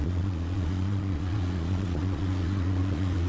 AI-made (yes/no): yes